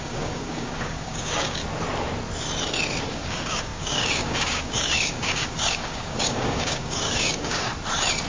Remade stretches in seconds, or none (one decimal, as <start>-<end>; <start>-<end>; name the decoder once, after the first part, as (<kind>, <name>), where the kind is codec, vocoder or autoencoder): 0.0-1.6 (codec, DAC); 3.1-7.7